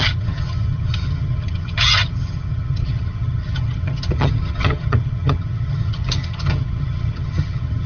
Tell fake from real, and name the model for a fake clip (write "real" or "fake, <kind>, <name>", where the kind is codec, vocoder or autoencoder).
fake, vocoder, HiFi-GAN